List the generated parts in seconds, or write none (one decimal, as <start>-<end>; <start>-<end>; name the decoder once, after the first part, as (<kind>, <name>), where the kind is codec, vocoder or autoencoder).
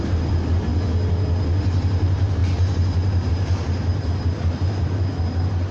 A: 0.0-0.7 (vocoder, BigVGAN v2); 1.6-5.7